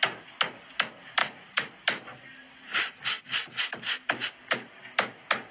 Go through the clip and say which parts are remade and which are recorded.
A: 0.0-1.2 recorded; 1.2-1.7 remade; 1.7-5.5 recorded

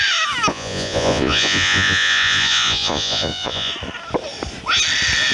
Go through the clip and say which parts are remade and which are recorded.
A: 0.0-0.5 recorded; 0.5-3.7 remade; 3.7-5.3 recorded